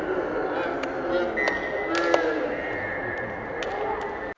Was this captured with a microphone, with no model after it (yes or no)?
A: yes